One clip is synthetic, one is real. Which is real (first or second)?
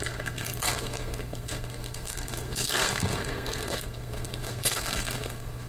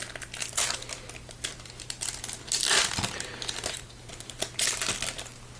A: second